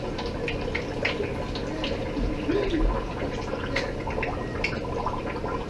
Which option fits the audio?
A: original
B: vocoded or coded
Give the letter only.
A